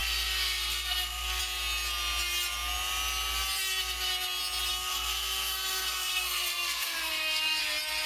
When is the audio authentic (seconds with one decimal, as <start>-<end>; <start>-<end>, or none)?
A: 1.4-4.7; 7.6-8.1